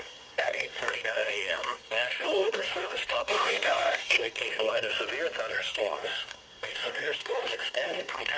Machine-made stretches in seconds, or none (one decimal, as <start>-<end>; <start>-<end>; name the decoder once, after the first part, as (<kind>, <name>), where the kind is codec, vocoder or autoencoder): 0.0-4.9 (codec, SNAC); 5.5-8.4